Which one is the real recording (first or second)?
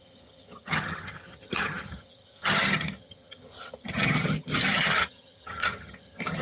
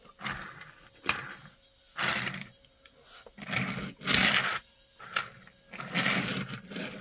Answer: second